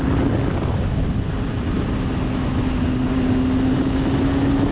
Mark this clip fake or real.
real